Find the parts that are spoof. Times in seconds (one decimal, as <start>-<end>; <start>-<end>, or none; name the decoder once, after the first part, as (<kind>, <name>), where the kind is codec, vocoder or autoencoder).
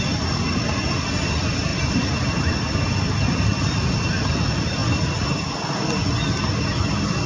none